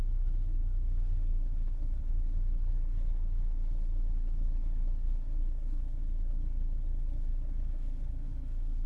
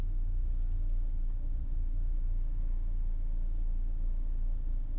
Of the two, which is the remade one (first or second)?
first